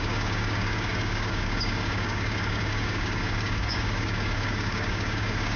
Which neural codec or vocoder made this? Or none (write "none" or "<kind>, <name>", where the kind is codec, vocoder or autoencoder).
codec, DAC